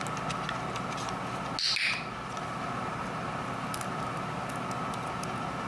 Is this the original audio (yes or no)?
yes